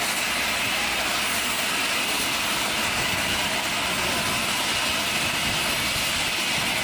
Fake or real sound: real